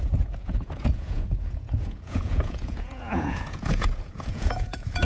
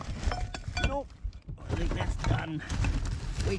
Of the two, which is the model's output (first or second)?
first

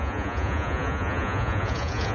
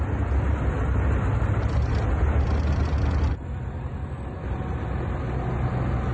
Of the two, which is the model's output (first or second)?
first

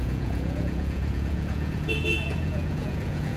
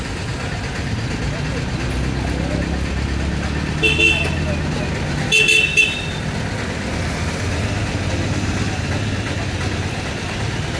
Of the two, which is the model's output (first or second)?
first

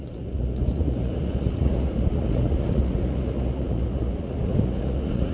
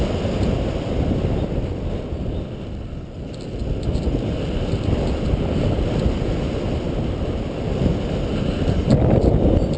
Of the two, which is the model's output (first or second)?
first